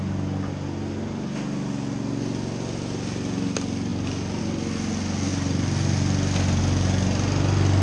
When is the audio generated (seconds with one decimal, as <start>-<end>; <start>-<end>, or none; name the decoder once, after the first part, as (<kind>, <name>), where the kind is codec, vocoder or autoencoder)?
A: none